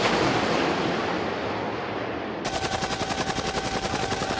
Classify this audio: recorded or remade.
recorded